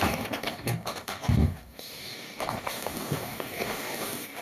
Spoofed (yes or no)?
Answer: yes